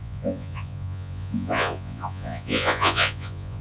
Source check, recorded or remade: remade